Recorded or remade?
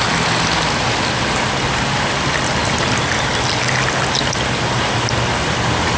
recorded